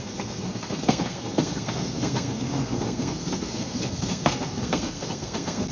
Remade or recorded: remade